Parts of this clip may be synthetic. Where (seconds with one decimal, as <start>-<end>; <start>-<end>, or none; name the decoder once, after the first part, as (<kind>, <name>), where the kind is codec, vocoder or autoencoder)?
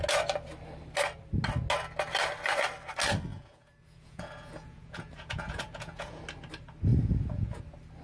3.3-6.2 (vocoder, Vocos); 6.9-7.6